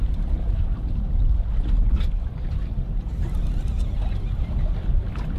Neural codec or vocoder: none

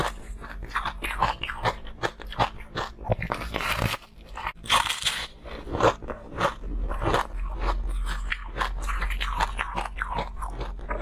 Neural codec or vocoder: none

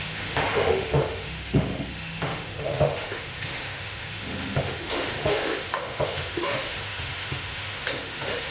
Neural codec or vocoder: autoencoder, DAC-VAE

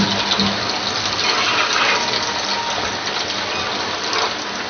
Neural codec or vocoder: none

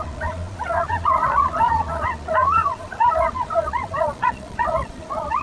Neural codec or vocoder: vocoder, Vocos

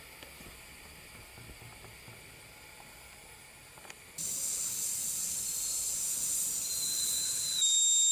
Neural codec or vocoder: none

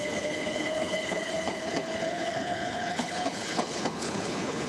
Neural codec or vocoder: codec, HILCodec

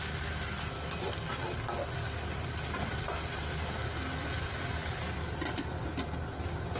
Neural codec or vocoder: none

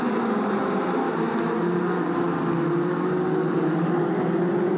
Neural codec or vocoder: none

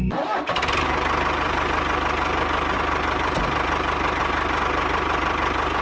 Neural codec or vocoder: none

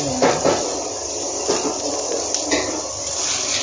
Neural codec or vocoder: none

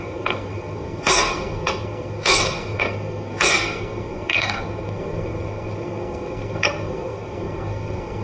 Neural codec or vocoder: codec, SNAC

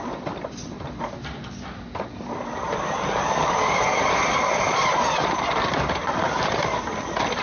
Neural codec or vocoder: vocoder, BigVGAN v2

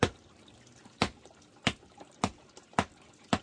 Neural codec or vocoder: none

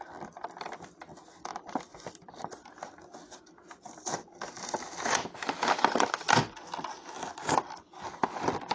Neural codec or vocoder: none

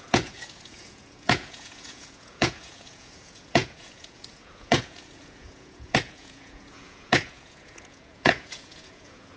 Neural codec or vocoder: vocoder, Vocos